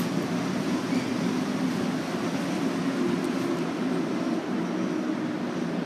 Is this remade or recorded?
recorded